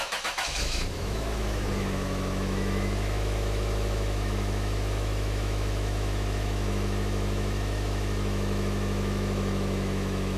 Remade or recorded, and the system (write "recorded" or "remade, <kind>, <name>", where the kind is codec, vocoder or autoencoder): remade, autoencoder, DAC-VAE